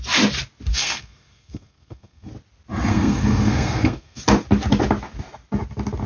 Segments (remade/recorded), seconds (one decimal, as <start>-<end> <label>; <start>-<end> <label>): 0.0-0.7 recorded; 0.7-2.3 remade; 2.3-2.9 recorded; 2.9-4.2 remade; 4.2-6.1 recorded